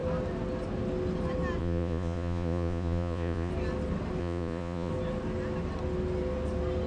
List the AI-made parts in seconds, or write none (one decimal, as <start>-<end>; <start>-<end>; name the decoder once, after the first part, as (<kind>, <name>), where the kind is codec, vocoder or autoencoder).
1.6-3.5 (vocoder, Vocos); 4.2-4.9